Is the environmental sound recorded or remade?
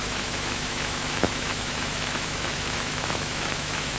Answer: remade